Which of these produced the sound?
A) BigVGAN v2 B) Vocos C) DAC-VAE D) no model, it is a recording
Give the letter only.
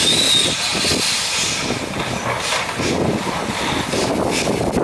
D